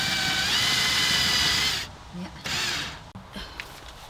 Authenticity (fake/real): real